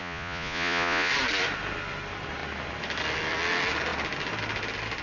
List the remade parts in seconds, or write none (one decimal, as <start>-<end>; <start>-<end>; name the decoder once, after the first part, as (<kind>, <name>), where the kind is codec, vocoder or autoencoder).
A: 0.0-1.1 (vocoder, Vocos)